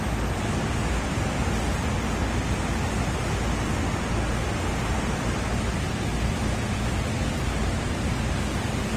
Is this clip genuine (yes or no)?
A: yes